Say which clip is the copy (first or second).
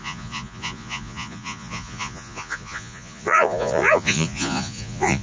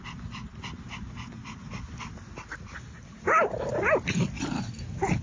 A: first